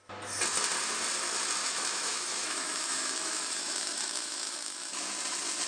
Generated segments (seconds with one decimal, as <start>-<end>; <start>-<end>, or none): 1.6-5.0